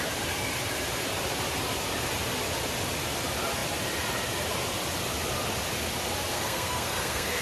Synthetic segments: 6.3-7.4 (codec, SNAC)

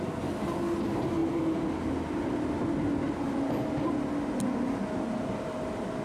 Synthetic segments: none

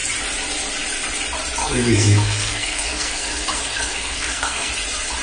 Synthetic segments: 1.6-4.7 (codec, SNAC)

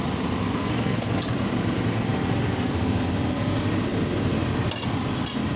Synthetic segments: 0.4-1.2 (codec, SNAC)

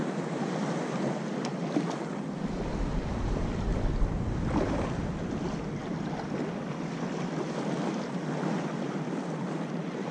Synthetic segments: none